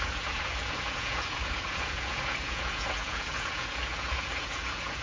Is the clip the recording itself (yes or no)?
no